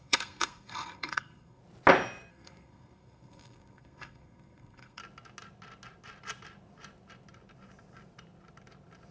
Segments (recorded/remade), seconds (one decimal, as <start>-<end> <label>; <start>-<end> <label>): 0.0-1.6 remade; 1.6-2.3 recorded; 2.3-5.0 remade; 5.0-9.1 recorded